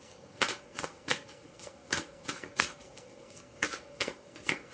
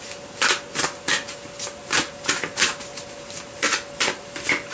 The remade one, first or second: first